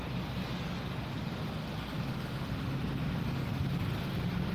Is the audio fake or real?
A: real